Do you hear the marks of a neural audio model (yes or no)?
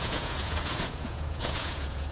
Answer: yes